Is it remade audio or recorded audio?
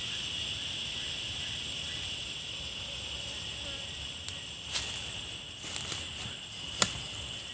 recorded